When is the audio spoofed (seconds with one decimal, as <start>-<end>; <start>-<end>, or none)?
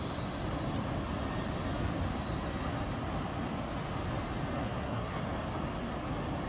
4.6-5.2